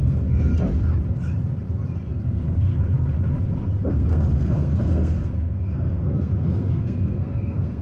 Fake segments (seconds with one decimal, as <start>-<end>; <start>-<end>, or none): 0.0-0.5; 2.2-2.7; 3.9-7.8